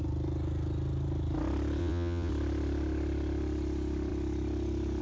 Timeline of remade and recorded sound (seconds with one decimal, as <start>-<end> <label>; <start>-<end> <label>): 0.0-1.8 recorded; 1.8-2.3 remade; 2.3-5.0 recorded